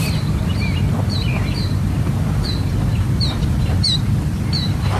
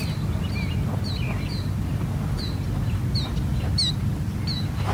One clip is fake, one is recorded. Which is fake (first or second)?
first